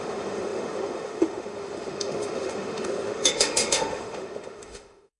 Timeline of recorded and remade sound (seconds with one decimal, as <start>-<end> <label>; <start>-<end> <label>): 0.0-5.2 remade